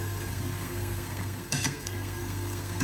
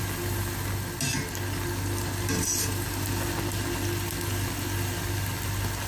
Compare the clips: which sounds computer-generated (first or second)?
first